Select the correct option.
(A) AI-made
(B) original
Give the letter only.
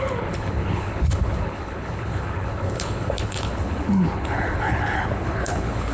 A